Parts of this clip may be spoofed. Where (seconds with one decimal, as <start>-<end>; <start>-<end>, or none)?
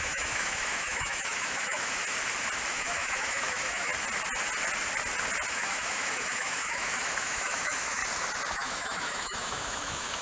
0.0-2.0; 2.7-3.9; 5.5-8.0; 8.5-10.2